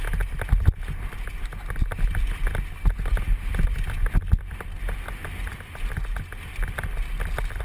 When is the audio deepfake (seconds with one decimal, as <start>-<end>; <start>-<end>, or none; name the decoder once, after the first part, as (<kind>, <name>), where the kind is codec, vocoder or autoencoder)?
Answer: 3.3-4.6 (vocoder, BigVGAN v2); 6.5-7.6